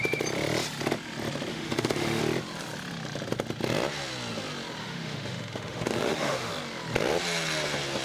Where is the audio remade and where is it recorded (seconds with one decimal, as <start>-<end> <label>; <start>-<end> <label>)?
0.0-1.5 recorded; 1.5-2.2 remade; 2.2-4.8 recorded; 4.8-6.5 remade; 6.5-8.0 recorded